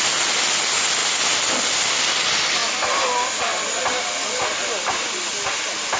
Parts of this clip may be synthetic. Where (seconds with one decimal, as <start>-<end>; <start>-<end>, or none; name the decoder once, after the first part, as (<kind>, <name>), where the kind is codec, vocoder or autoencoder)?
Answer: none